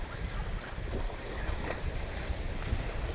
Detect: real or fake fake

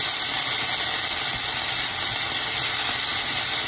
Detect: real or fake real